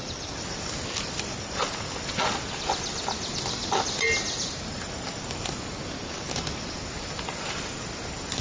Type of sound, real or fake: real